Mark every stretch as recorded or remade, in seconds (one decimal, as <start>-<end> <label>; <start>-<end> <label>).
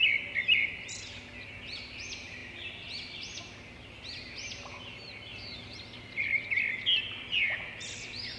0.0-8.4 recorded